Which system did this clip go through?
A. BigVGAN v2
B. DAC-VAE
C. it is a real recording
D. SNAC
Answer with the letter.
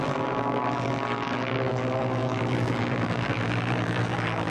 A